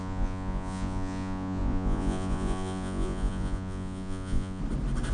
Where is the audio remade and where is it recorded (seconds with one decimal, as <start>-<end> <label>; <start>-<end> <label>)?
0.0-4.6 remade; 4.6-5.1 recorded